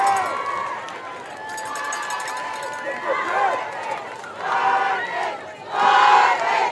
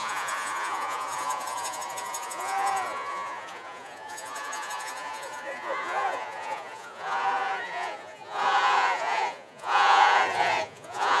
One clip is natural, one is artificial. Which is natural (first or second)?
first